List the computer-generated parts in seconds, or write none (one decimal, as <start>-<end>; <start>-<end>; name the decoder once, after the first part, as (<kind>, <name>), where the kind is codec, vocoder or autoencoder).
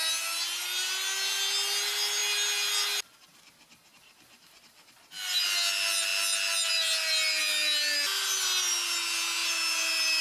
9.4-10.2 (vocoder, BigVGAN v2)